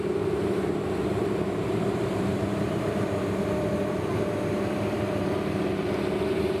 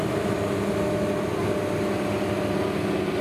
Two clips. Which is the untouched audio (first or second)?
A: second